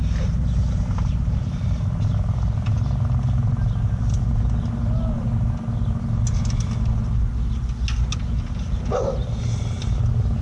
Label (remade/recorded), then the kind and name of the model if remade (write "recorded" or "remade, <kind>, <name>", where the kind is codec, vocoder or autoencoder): recorded